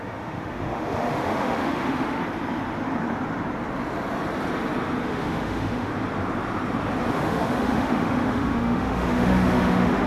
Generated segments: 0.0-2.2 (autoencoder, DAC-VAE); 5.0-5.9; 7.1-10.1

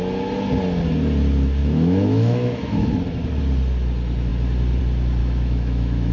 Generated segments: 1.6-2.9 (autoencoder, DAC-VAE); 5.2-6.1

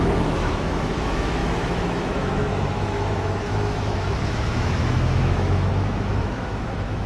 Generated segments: 0.0-7.1 (autoencoder, DAC-VAE)

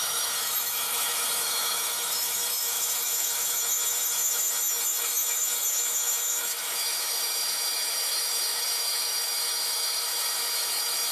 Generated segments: 0.0-11.1 (autoencoder, DAC-VAE)

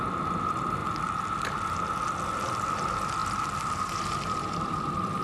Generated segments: none

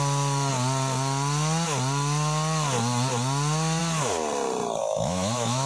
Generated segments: 4.8-5.7 (autoencoder, DAC-VAE)

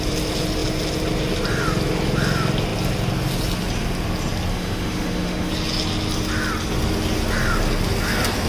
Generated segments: 4.5-5.5 (autoencoder, DAC-VAE)